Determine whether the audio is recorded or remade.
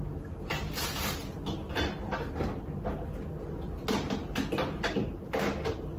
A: recorded